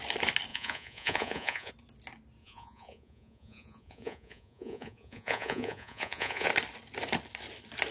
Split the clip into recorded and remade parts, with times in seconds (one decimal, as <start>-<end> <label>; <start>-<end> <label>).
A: 0.0-0.5 recorded; 0.5-1.7 remade; 1.7-2.4 recorded; 2.4-6.5 remade; 6.5-7.9 recorded